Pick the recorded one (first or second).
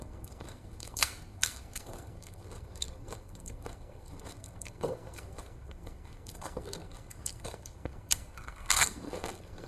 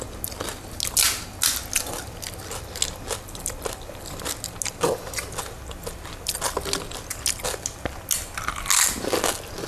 second